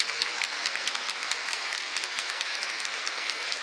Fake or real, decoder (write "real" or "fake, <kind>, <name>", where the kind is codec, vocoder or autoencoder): fake, codec, SNAC